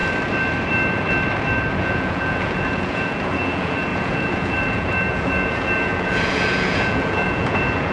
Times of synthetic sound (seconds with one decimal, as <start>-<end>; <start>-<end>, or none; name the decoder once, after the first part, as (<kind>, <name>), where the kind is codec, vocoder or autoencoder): 1.7-7.9 (vocoder, Vocos)